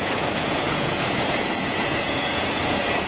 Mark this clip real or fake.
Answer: fake